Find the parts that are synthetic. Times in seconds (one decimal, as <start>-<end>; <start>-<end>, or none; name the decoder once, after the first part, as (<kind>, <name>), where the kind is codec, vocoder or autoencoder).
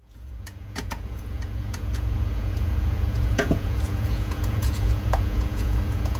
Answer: 0.0-6.2 (vocoder, Vocos)